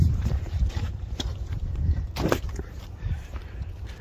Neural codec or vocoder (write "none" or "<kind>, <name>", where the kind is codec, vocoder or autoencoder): vocoder, BigVGAN v2